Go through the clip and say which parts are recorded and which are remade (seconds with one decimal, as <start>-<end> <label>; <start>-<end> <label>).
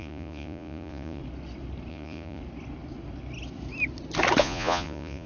0.0-1.2 remade; 1.2-1.9 recorded; 1.9-2.4 remade; 2.4-4.4 recorded; 4.4-5.3 remade